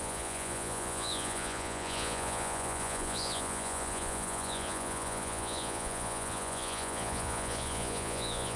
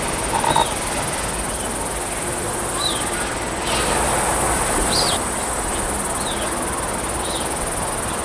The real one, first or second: second